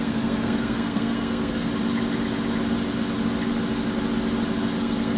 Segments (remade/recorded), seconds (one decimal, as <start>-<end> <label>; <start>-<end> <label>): 0.0-1.7 remade; 1.7-4.8 recorded; 4.8-5.2 remade